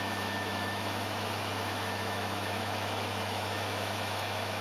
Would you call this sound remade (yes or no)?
yes